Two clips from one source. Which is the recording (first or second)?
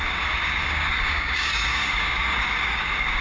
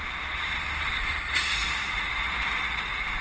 second